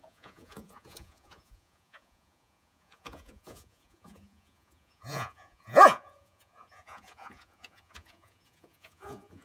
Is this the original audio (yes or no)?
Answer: no